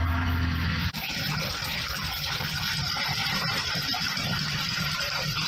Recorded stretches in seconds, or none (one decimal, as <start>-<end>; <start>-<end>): none